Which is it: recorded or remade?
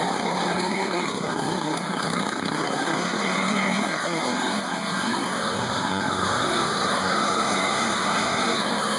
remade